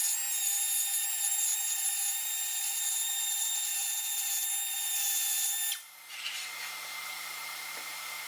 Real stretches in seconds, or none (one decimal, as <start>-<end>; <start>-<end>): 0.0-1.1; 1.5-2.1; 3.7-7.0